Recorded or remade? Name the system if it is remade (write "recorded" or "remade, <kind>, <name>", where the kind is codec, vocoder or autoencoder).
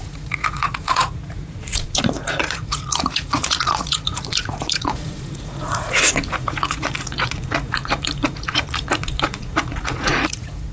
remade, vocoder, Vocos